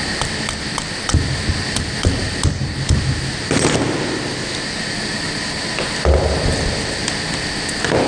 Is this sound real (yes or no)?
yes